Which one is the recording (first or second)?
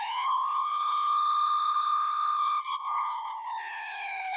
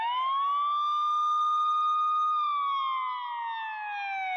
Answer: second